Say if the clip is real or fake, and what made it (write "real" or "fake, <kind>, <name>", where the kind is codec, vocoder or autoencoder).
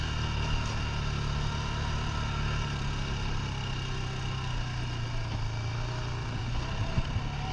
real